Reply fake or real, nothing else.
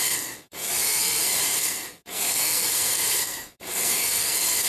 fake